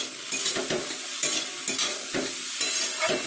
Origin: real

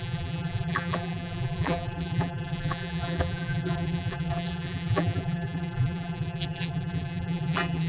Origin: fake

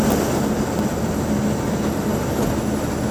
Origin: real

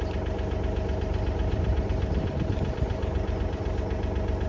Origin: real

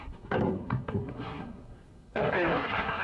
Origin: fake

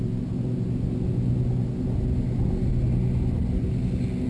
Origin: real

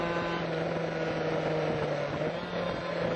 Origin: real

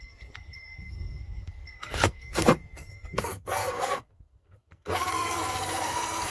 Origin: fake